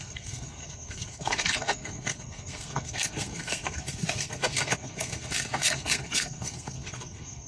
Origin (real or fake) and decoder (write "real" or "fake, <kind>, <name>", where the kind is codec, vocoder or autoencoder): fake, codec, SNAC